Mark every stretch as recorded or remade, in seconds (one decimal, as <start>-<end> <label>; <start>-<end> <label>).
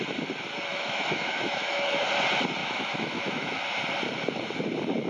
0.0-0.7 recorded; 0.7-2.0 remade; 2.0-2.6 recorded; 2.6-3.8 remade; 3.8-5.1 recorded